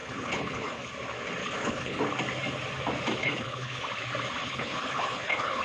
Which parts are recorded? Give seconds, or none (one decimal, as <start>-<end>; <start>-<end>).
0.9-1.4; 2.0-3.2; 3.8-4.4